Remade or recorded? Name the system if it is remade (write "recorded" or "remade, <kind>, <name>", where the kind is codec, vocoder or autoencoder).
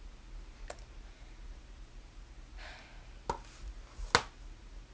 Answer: recorded